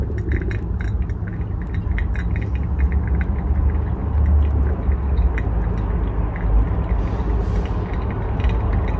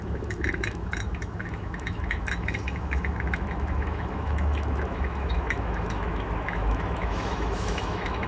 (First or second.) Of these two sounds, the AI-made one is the second